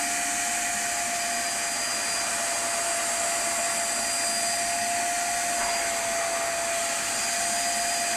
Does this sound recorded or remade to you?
recorded